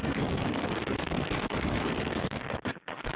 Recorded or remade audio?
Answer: remade